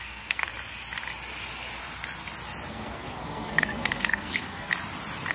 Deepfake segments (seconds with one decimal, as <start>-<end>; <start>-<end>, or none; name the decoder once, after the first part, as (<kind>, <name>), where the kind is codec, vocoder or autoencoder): 0.0-0.5 (codec, SNAC); 2.7-4.7